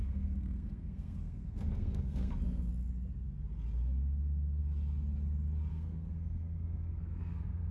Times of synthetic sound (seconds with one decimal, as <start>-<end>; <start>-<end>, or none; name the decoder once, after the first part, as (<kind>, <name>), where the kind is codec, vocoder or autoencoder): 0.0-2.7 (codec, SNAC); 5.7-7.7